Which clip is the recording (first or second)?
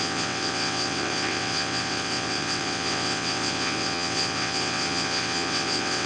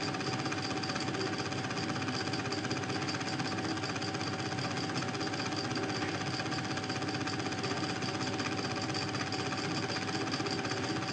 second